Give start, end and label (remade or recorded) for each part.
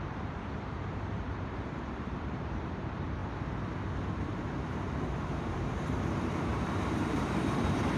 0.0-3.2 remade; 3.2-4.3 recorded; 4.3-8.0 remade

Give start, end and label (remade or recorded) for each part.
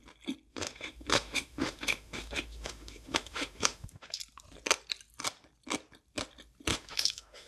0.0-0.5 recorded; 0.5-4.2 remade; 4.2-6.7 recorded; 6.7-7.5 remade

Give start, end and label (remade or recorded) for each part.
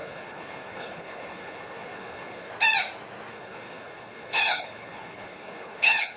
0.0-2.5 remade; 2.5-3.3 recorded; 3.3-6.2 remade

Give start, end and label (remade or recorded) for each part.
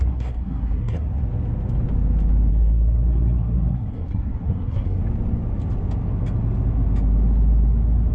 0.0-1.1 remade; 1.1-2.5 recorded; 2.5-5.0 remade; 5.0-8.1 recorded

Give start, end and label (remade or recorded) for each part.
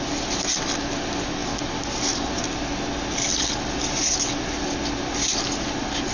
0.0-6.1 recorded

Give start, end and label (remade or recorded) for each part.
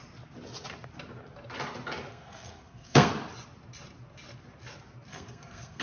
0.0-2.1 recorded; 2.1-3.1 remade; 3.1-5.1 recorded; 5.1-5.8 remade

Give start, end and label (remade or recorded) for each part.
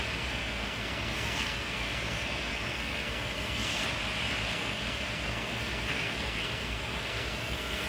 0.0-3.8 remade; 3.8-4.5 recorded; 4.5-7.9 remade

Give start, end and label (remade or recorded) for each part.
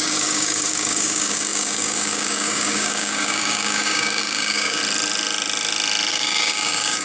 0.0-4.8 remade; 4.8-6.1 recorded; 6.1-7.0 remade